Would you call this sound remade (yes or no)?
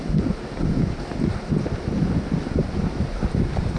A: no